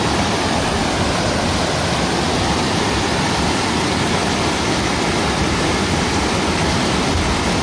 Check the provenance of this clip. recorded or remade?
recorded